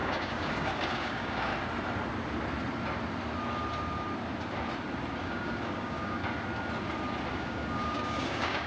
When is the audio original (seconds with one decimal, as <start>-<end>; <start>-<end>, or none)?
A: 1.5-5.2; 6.2-7.3